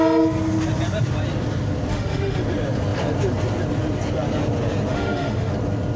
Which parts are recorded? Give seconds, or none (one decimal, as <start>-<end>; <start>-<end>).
0.0-1.9; 2.4-4.9; 5.5-6.0